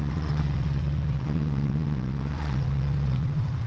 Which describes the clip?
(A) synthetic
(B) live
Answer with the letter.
A